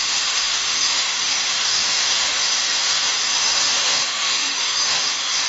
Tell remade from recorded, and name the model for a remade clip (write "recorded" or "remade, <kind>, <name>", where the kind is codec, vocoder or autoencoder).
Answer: remade, autoencoder, DAC-VAE